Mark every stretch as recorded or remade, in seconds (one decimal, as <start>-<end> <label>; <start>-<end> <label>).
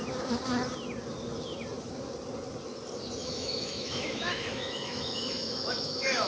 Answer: 0.0-3.2 recorded; 3.2-6.3 remade